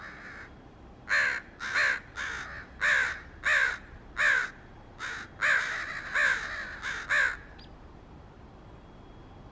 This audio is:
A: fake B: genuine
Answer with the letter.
B